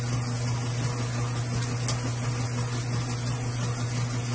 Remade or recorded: recorded